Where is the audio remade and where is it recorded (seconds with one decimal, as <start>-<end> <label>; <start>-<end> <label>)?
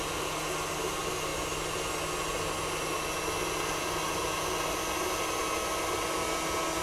0.0-6.8 recorded